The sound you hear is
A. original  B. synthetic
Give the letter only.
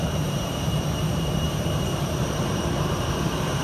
B